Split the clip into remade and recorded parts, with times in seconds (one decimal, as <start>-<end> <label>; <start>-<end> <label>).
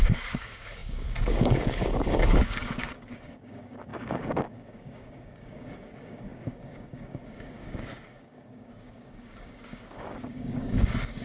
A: 0.0-11.2 remade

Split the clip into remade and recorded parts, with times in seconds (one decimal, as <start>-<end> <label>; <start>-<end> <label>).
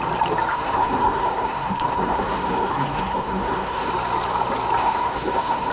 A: 0.0-0.5 recorded; 0.5-3.9 remade; 3.9-4.8 recorded; 4.8-5.7 remade